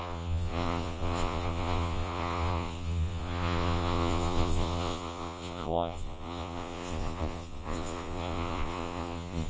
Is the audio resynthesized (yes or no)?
yes